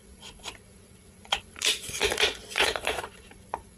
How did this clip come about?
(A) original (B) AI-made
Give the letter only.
B